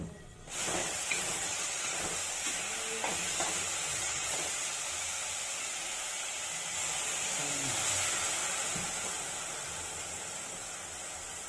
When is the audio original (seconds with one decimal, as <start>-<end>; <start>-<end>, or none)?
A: 0.0-0.8; 2.0-3.9; 4.5-11.5